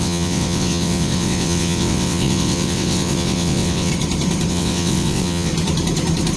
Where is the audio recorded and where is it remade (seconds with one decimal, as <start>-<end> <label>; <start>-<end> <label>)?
0.0-3.9 remade; 3.9-4.5 recorded; 4.5-5.5 remade; 5.5-6.4 recorded

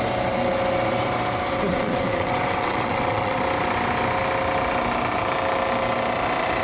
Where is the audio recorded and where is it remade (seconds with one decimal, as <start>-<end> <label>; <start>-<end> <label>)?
0.0-1.7 recorded; 1.7-3.4 remade; 3.4-6.6 recorded

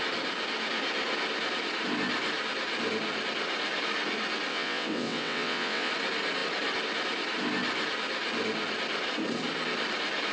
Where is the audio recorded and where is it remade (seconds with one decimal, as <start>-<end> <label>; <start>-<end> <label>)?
0.0-4.5 recorded; 4.5-5.9 remade; 5.9-10.3 recorded

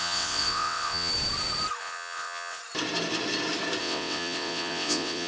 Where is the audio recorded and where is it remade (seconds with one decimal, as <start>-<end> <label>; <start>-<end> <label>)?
0.0-1.1 remade; 1.1-1.8 recorded; 1.8-2.6 remade; 2.6-3.8 recorded; 3.8-5.3 remade